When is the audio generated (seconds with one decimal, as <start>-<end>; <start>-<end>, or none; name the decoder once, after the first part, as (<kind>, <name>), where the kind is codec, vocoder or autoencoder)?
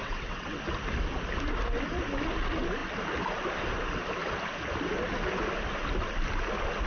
0.0-0.6 (vocoder, WaveNeXt)